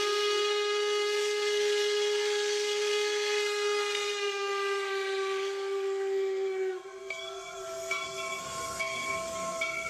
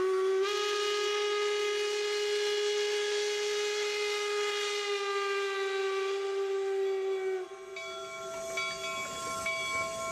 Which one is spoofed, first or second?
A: first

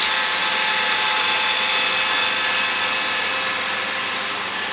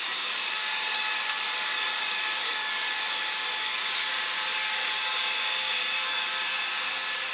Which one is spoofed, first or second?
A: second